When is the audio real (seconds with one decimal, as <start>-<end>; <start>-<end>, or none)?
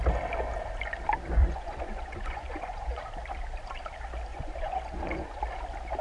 0.0-1.4; 3.0-4.3; 5.4-6.0